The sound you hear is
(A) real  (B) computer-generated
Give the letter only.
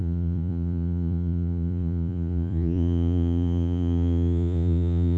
B